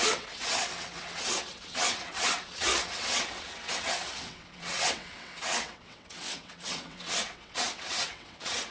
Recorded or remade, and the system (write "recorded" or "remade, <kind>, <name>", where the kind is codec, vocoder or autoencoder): remade, vocoder, WaveNeXt